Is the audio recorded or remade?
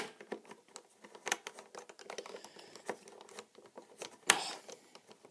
recorded